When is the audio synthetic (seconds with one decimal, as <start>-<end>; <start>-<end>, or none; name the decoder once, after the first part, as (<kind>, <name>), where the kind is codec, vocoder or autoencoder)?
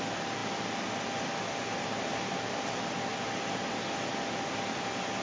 none